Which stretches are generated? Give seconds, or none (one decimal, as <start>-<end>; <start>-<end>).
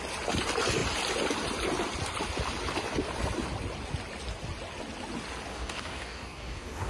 5.5-6.9